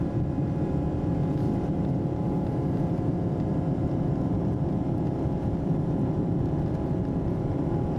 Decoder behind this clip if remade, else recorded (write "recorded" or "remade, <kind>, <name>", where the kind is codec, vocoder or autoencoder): remade, vocoder, BigVGAN v2